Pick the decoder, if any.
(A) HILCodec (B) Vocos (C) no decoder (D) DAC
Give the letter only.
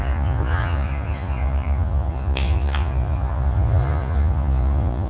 B